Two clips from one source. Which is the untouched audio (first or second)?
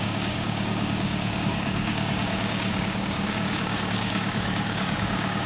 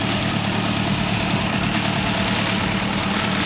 second